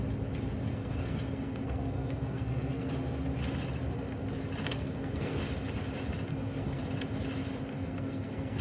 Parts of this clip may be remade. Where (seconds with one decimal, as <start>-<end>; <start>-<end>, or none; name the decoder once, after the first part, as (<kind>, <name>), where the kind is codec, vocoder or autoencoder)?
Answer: 0.6-2.9 (codec, SNAC); 4.7-5.4; 6.3-6.8; 7.7-8.6